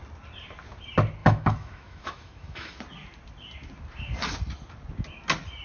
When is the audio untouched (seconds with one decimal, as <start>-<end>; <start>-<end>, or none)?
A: 0.0-1.2; 2.8-5.6